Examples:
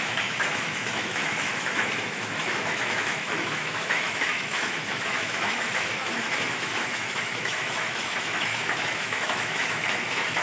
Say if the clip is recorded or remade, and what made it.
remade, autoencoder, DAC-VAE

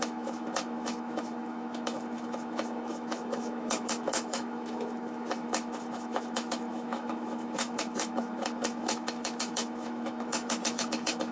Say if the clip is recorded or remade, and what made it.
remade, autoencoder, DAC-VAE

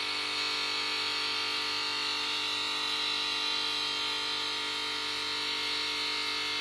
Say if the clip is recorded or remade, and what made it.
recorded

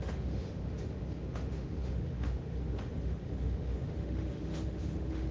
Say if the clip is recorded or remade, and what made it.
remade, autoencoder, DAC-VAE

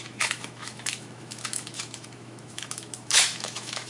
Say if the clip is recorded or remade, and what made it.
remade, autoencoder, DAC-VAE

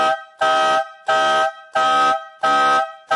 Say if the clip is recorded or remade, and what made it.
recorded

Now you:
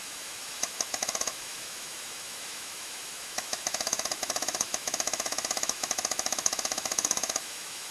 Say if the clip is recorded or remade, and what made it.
remade, autoencoder, DAC-VAE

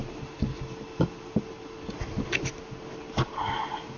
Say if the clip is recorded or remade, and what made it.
recorded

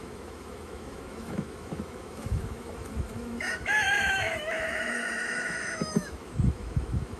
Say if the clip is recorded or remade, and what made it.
remade, autoencoder, DAC-VAE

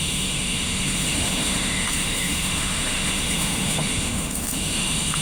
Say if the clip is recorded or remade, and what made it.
remade, autoencoder, DAC-VAE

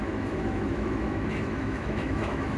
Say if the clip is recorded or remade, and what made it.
remade, autoencoder, DAC-VAE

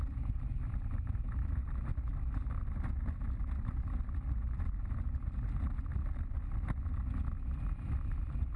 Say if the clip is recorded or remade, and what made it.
recorded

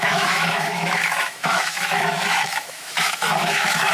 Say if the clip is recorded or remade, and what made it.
remade, autoencoder, DAC-VAE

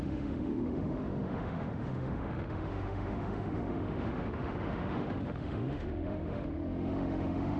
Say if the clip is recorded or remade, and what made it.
remade, autoencoder, DAC-VAE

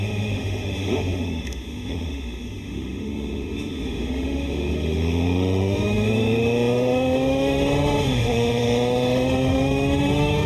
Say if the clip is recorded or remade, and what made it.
remade, autoencoder, DAC-VAE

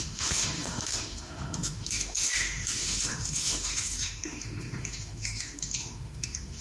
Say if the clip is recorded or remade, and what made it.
remade, autoencoder, DAC-VAE